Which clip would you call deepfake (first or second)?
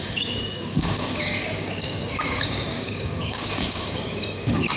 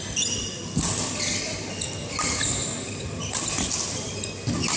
first